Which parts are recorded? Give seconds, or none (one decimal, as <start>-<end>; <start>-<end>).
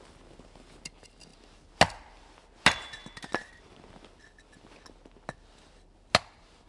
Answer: 0.0-6.7